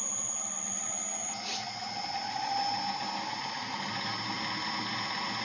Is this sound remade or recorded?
recorded